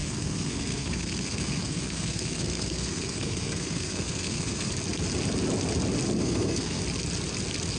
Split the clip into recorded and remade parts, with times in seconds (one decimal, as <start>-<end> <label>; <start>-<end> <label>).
0.0-4.7 remade; 4.7-6.2 recorded; 6.2-6.8 remade; 6.8-7.8 recorded